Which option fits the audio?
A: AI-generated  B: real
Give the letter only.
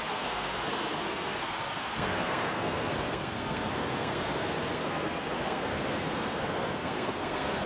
A